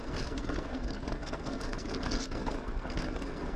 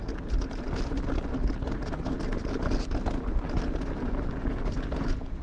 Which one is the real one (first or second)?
second